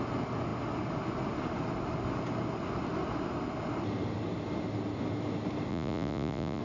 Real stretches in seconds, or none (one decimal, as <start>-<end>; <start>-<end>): 0.0-5.7